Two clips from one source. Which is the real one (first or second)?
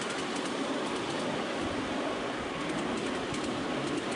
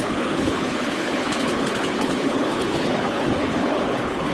first